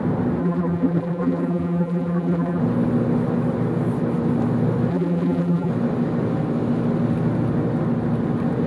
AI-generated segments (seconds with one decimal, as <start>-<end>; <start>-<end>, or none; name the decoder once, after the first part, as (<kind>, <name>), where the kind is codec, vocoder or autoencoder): 0.4-2.6 (vocoder, BigVGAN v2); 4.9-5.7